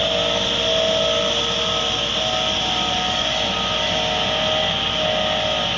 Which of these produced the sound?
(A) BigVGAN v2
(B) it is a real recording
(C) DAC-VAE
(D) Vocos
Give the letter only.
B